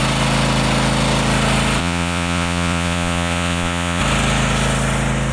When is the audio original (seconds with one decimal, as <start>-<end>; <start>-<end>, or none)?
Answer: 0.0-1.8; 4.0-5.3